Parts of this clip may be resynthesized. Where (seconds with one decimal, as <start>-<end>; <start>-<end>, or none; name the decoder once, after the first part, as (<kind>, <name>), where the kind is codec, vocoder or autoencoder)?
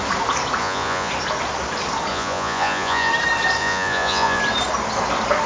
0.6-1.1 (vocoder, Vocos); 2.1-3.1; 3.6-4.4